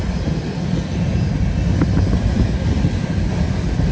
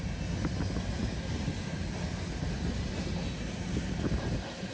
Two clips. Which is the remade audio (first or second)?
first